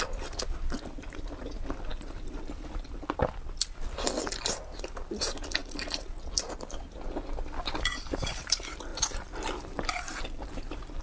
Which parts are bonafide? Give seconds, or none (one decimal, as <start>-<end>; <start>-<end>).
0.0-11.0